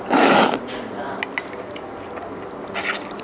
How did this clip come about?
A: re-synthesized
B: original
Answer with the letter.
B